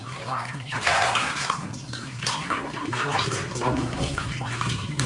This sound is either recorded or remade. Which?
remade